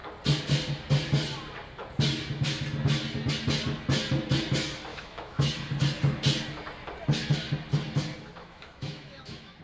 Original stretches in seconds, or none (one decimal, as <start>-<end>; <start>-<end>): 0.0-4.9; 5.5-8.4